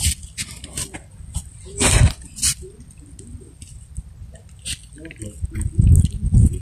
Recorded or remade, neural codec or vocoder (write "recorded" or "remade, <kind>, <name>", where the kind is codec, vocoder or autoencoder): recorded